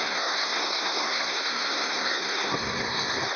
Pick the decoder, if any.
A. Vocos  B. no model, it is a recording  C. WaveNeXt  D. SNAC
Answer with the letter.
D